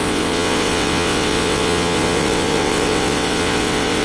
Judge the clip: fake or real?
fake